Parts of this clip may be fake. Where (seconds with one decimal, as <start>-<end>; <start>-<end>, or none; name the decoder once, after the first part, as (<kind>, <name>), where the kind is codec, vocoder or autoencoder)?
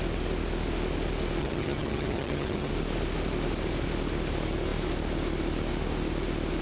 1.4-2.7 (vocoder, HiFi-GAN)